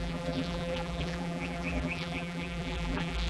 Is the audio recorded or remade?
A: remade